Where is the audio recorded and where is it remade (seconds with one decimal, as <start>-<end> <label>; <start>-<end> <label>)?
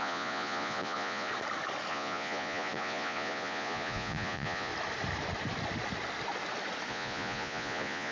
0.0-1.3 remade; 1.3-1.9 recorded; 1.9-4.7 remade; 4.7-6.9 recorded; 6.9-8.1 remade